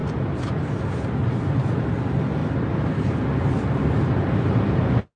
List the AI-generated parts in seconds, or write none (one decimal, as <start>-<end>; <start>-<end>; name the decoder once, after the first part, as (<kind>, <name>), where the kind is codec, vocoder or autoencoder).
none